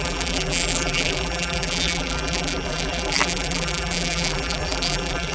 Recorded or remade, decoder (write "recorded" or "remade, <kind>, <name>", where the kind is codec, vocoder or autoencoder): remade, vocoder, BigVGAN v2